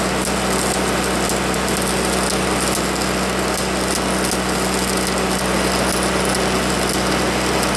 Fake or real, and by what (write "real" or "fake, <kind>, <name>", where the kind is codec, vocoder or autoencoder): real